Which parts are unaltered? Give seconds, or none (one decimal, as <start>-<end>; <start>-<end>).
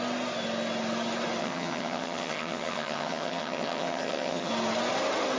0.0-1.4; 4.5-5.4